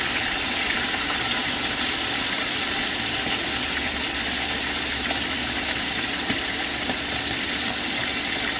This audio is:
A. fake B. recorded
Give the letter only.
A